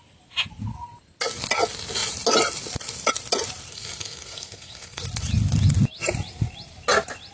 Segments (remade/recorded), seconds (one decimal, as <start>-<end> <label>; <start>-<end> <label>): 0.0-3.7 recorded; 3.7-5.0 remade; 5.0-7.3 recorded